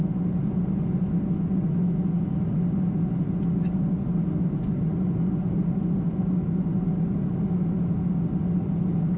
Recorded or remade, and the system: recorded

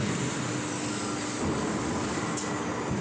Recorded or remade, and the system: recorded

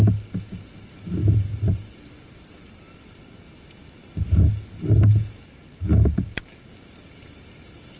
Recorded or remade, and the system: recorded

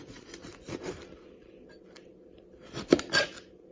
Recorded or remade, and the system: remade, vocoder, BigVGAN v2